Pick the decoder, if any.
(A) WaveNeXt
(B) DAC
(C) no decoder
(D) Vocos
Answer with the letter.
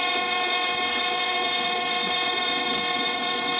A